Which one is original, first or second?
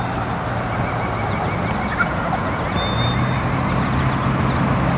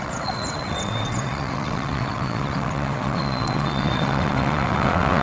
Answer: first